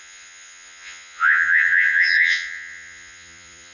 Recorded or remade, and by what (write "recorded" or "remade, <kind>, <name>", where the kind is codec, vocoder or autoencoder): remade, vocoder, Vocos